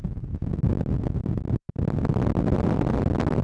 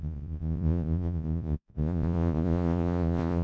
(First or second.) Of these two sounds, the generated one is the second